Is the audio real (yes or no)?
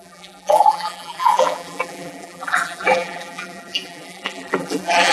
no